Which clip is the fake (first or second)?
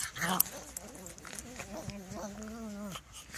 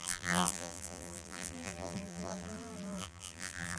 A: second